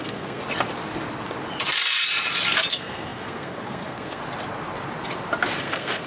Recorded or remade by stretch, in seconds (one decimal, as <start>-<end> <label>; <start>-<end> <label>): 0.0-0.4 remade; 0.4-2.7 recorded; 2.7-4.2 remade; 4.2-5.6 recorded; 5.6-6.1 remade